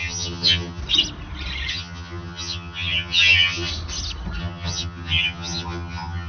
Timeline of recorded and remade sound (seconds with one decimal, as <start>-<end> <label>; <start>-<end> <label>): 0.0-0.8 remade; 0.8-1.7 recorded; 1.7-3.7 remade; 3.7-4.4 recorded; 4.4-6.3 remade